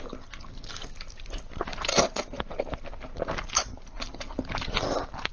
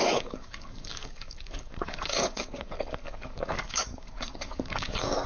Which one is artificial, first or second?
second